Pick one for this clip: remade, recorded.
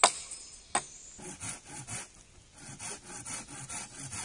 recorded